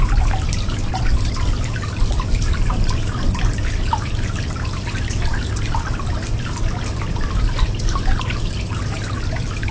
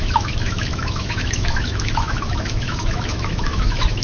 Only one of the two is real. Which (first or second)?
first